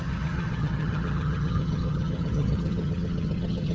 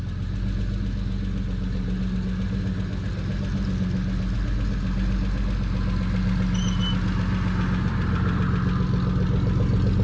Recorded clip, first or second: second